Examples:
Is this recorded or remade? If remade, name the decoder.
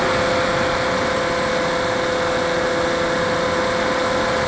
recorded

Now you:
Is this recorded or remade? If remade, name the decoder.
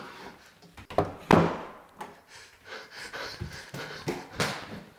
recorded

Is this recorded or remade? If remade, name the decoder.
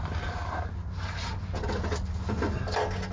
recorded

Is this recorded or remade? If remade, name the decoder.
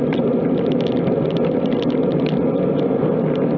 recorded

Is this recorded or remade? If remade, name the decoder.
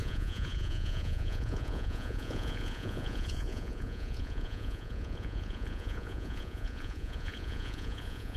remade, vocoder, Vocos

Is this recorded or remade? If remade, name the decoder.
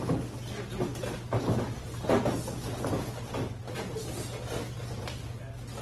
recorded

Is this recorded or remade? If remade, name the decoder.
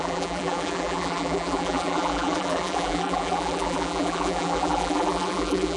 remade, vocoder, BigVGAN v2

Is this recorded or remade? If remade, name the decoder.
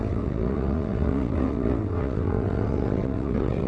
remade, vocoder, WaveNeXt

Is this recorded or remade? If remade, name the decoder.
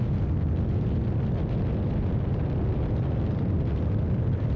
recorded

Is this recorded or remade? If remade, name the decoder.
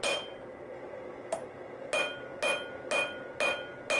recorded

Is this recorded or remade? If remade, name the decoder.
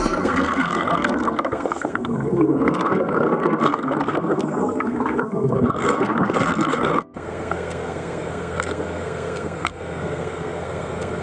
remade, codec, SNAC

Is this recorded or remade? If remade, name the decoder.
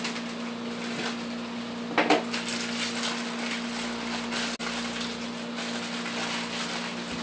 recorded